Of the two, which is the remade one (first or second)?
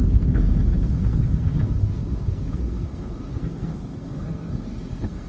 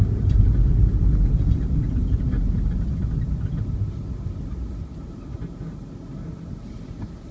first